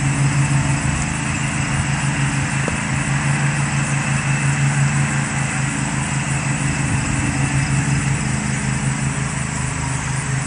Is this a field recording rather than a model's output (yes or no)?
yes